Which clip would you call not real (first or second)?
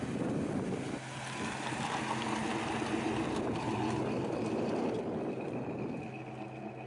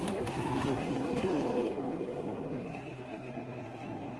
second